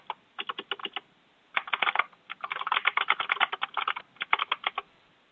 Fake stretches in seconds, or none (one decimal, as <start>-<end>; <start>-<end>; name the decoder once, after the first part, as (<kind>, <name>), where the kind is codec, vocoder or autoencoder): none